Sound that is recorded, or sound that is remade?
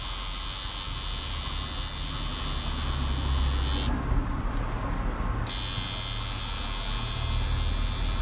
recorded